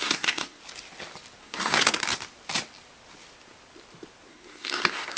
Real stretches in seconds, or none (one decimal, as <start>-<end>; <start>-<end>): 0.6-1.4; 2.0-4.3